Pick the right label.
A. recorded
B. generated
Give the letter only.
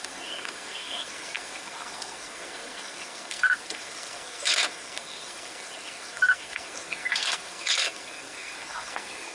B